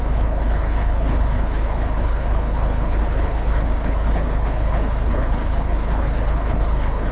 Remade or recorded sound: remade